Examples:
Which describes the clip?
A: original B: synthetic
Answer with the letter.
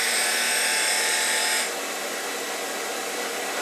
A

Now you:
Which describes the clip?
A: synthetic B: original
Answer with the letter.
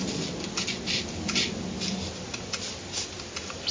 B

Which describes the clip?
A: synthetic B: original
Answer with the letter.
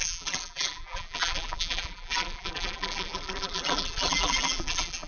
A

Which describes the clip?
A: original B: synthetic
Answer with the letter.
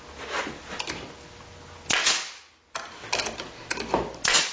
A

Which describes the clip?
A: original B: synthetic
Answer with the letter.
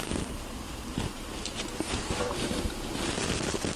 B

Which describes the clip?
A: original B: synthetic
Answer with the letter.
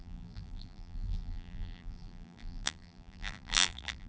B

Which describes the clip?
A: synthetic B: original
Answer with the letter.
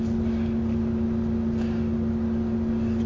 B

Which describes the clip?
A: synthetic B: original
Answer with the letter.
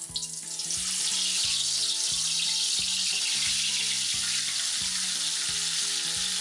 B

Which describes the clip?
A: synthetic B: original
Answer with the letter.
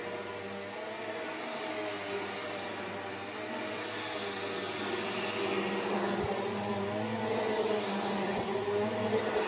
B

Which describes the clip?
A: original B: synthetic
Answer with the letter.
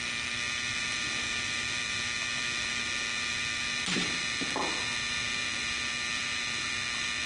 B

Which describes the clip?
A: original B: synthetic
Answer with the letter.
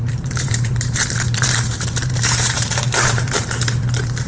B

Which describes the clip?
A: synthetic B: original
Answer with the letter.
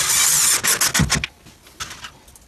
B